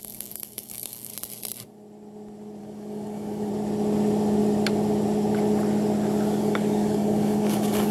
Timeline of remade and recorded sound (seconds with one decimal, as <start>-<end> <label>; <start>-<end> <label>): 0.0-1.1 remade; 1.1-2.6 recorded; 2.6-3.5 remade; 3.5-6.4 recorded; 6.4-7.9 remade